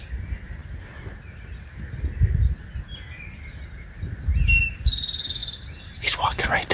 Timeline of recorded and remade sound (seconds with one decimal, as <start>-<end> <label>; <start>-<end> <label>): 0.0-6.7 recorded